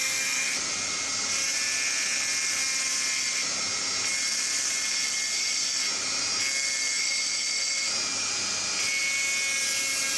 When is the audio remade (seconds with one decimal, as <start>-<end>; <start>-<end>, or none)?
0.0-0.5